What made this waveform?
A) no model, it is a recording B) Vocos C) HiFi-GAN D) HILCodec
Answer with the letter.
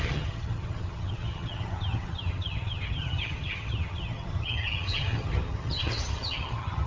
C